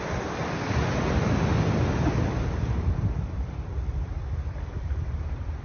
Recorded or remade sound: recorded